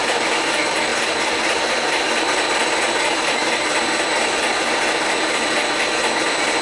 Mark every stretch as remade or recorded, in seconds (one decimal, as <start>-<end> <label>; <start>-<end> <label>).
0.0-6.6 recorded